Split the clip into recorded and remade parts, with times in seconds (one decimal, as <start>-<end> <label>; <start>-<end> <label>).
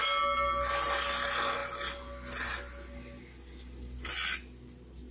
0.0-5.1 recorded